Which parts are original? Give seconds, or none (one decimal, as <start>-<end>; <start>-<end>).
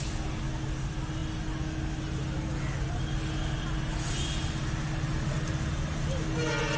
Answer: 0.0-6.8